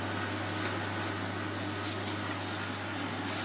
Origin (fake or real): real